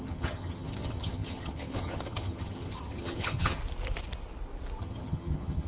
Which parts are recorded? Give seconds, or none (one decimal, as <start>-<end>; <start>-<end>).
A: 3.6-4.8

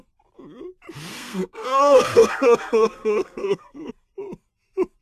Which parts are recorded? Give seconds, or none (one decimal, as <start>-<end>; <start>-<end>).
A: 0.0-1.1; 3.9-5.0

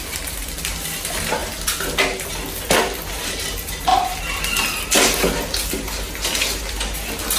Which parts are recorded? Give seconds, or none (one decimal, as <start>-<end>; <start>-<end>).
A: 0.0-7.4